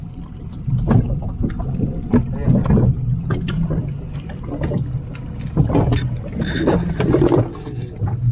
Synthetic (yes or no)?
no